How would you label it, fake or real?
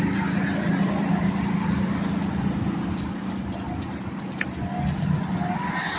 real